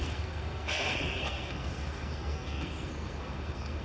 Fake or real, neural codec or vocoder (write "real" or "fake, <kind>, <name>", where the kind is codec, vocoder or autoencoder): fake, codec, SNAC